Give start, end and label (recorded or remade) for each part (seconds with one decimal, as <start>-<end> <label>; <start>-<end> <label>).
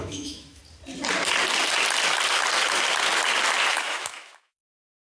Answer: 0.0-0.6 remade; 0.6-3.7 recorded; 3.7-5.1 remade